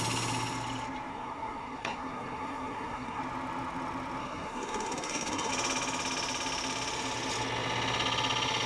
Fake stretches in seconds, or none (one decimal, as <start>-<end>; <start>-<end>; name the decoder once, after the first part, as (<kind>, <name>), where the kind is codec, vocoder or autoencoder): 1.1-3.2 (codec, SNAC); 4.2-5.5